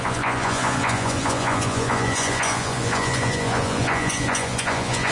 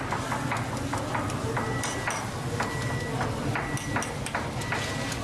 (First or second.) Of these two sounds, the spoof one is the first